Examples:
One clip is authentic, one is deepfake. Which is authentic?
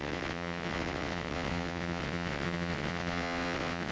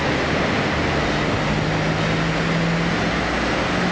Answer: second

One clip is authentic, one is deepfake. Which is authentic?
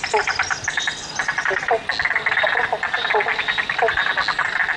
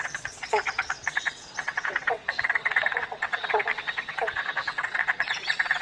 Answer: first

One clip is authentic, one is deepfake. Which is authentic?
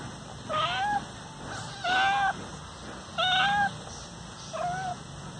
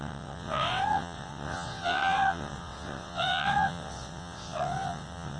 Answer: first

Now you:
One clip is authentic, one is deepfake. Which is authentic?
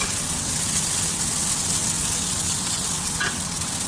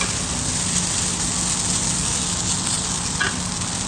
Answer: second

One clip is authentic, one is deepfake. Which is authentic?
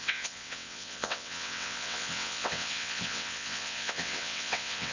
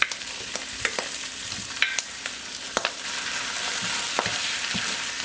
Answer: second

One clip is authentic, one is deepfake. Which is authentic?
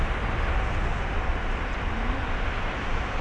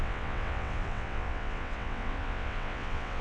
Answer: first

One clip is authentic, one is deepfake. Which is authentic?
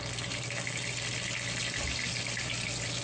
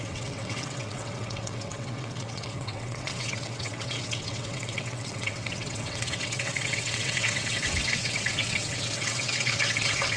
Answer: first